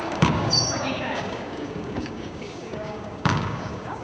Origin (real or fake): fake